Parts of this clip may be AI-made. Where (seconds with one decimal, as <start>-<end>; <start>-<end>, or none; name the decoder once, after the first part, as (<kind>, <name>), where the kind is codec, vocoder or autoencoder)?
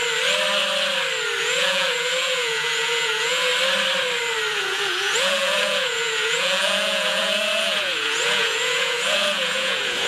1.4-3.5 (vocoder, Vocos); 4.5-10.1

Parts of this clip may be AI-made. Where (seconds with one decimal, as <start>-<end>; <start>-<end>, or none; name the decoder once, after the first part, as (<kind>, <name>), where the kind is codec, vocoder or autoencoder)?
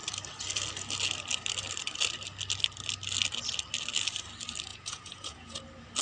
4.7-5.6 (vocoder, Vocos)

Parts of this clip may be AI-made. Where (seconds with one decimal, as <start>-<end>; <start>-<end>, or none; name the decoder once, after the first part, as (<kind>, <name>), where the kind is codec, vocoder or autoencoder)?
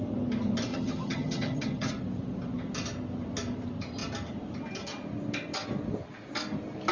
0.7-1.9 (vocoder, HiFi-GAN)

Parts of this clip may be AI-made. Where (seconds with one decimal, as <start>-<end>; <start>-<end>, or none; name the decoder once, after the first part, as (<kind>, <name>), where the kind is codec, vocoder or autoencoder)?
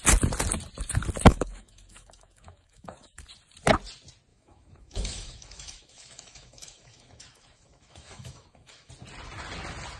1.3-3.2 (autoencoder, DAC-VAE); 4.3-8.9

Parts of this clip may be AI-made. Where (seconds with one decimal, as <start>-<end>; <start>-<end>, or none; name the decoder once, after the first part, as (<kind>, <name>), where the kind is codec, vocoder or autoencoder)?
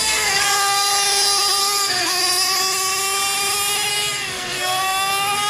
0.0-0.9 (codec, SNAC); 1.6-2.2; 3.9-5.5